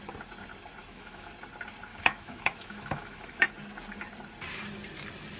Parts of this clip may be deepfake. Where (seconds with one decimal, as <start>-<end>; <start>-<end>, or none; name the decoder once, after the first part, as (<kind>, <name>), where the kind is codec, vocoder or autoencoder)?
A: 0.8-1.3 (autoencoder, DAC-VAE); 1.9-3.5